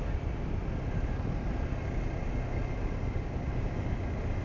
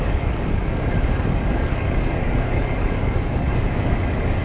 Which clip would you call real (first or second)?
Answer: first